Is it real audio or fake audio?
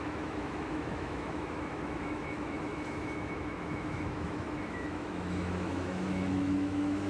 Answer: fake